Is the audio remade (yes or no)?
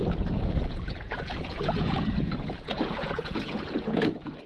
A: yes